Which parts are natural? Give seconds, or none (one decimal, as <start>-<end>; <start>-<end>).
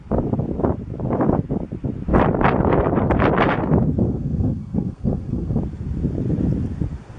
0.0-4.0; 5.6-7.2